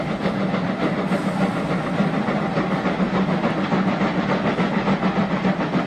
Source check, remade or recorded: recorded